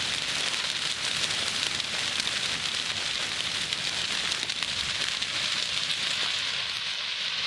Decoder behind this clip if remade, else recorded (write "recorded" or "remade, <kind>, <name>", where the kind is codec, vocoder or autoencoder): recorded